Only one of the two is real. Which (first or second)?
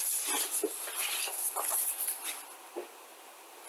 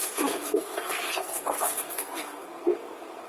first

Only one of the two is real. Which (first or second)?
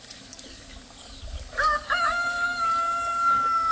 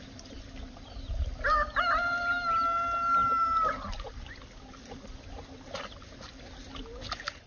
second